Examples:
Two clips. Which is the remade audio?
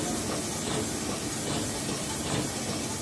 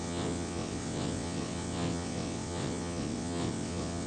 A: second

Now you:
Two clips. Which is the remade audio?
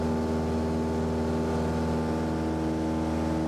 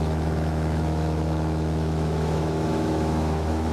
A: second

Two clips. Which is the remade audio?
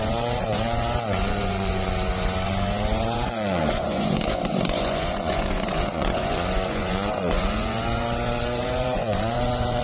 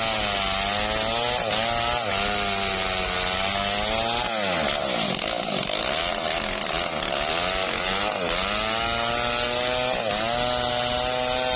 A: first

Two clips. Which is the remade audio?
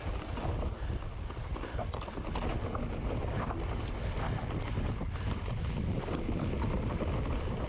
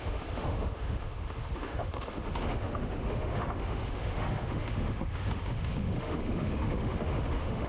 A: second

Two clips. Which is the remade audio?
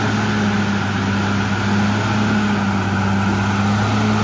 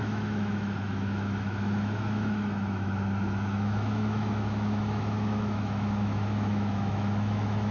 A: second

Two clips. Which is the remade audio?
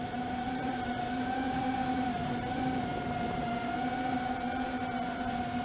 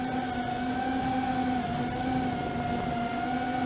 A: first